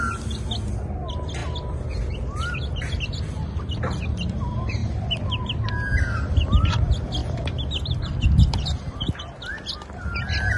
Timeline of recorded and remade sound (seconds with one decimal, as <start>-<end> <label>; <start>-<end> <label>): 0.0-4.8 recorded; 4.8-5.7 remade; 5.7-7.2 recorded; 7.2-9.2 remade; 9.2-10.6 recorded